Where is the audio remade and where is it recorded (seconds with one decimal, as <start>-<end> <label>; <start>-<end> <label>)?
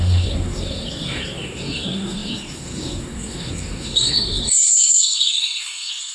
0.0-6.1 remade